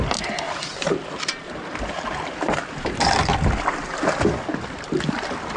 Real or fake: real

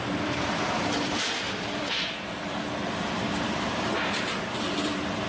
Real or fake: fake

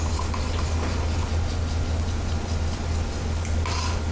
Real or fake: real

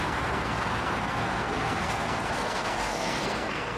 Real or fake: fake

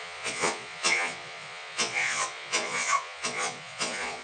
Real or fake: fake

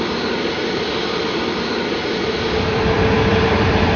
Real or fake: fake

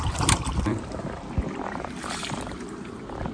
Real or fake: fake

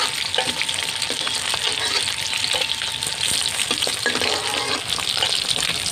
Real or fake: real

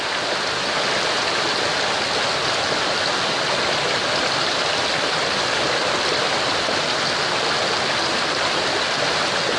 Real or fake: real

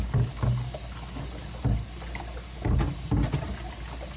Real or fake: real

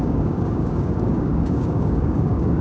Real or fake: fake